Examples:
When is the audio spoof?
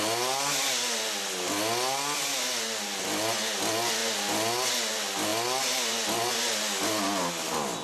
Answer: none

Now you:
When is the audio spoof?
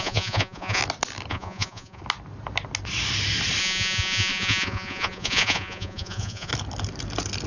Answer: 0.0-0.8; 1.3-2.0; 3.6-6.5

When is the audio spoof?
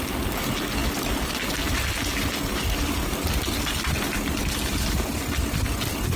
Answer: none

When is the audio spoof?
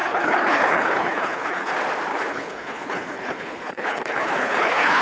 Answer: 0.0-1.7; 2.1-5.0